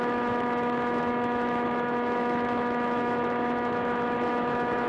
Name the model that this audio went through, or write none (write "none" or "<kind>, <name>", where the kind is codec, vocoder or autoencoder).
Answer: autoencoder, DAC-VAE